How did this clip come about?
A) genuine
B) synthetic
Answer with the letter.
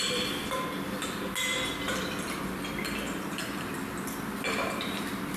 A